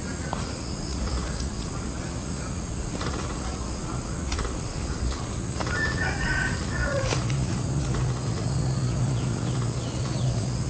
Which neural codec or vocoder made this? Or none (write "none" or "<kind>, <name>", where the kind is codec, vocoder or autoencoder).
vocoder, Vocos